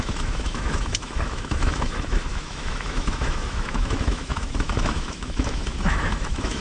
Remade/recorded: remade